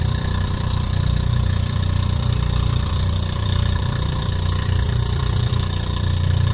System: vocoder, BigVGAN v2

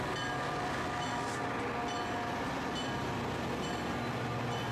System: none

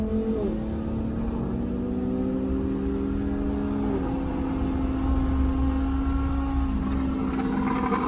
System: none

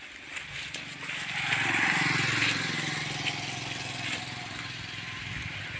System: none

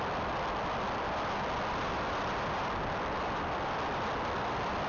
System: none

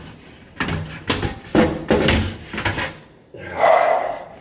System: none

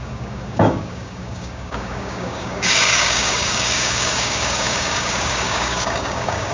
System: codec, DAC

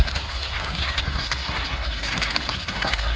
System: codec, SNAC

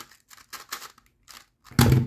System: none